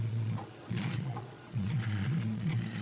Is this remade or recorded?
remade